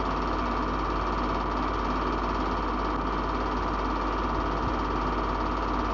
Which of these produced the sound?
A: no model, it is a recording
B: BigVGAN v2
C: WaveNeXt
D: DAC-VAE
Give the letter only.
A